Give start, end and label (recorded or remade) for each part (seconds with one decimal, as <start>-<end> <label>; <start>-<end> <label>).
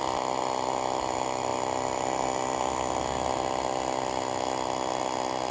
0.0-5.5 recorded